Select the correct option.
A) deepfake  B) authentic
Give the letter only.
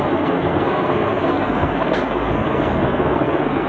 A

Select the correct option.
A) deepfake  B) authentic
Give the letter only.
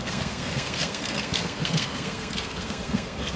A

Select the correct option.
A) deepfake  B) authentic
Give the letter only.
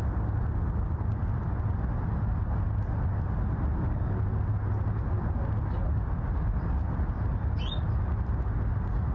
B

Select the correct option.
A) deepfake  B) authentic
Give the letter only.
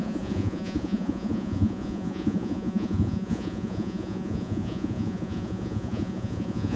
A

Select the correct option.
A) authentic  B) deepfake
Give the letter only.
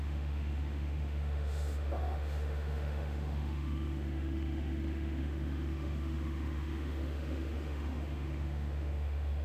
B